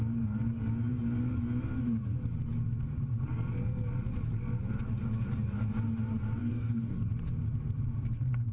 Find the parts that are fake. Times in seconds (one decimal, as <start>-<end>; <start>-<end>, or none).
6.4-7.1